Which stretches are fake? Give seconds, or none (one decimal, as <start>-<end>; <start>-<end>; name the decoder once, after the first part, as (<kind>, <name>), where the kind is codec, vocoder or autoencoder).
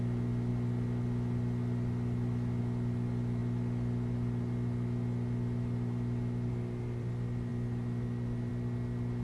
none